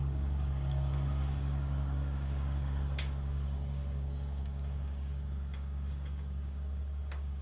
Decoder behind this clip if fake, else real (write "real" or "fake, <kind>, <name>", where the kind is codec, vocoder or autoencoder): fake, codec, DAC